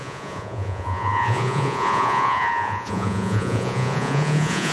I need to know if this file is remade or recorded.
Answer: remade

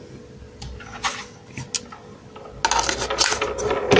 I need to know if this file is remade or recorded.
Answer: recorded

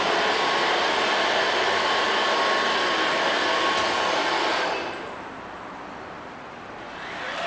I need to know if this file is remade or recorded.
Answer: recorded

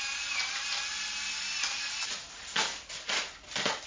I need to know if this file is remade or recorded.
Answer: recorded